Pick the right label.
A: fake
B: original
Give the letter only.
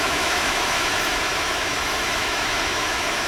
A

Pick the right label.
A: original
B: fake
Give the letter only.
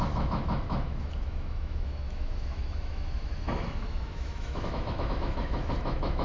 B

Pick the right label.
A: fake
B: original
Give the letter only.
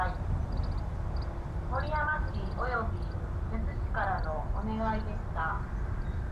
B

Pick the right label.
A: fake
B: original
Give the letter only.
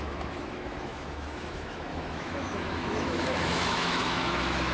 A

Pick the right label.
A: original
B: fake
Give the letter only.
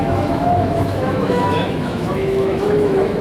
B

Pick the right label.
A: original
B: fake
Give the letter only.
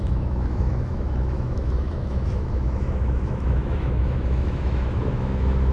B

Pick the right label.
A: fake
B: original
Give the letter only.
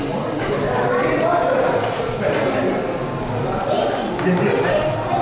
B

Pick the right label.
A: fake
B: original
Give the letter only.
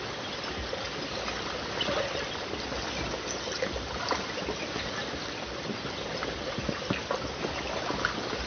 B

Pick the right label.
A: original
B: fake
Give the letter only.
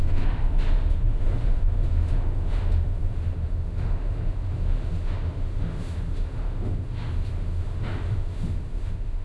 B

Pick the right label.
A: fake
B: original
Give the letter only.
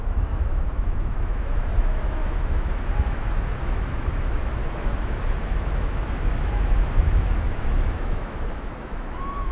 A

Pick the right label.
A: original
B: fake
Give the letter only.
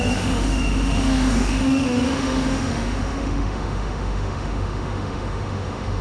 B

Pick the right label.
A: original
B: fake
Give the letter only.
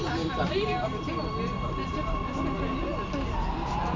A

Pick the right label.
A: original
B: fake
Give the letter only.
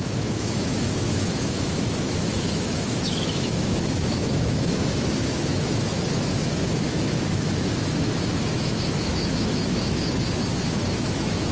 B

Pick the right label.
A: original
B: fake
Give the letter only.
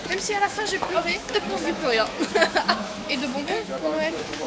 B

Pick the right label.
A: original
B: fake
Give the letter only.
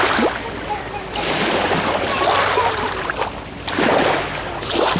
A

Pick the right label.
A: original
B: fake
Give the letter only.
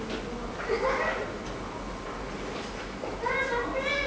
A